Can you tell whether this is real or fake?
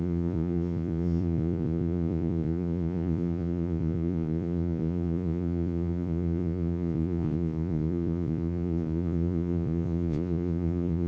fake